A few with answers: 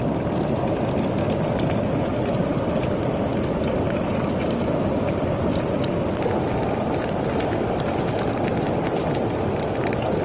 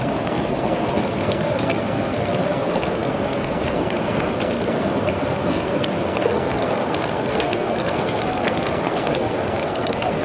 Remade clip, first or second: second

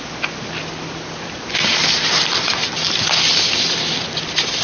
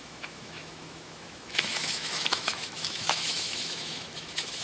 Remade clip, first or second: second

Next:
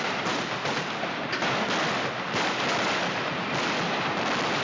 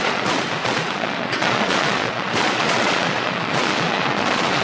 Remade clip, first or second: second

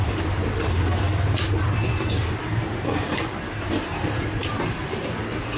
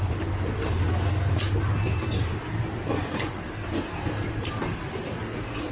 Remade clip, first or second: first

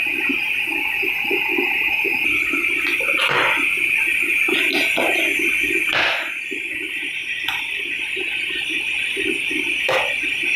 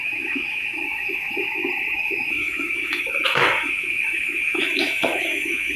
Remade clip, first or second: second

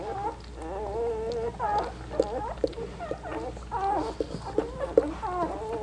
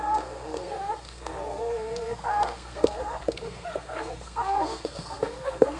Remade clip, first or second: second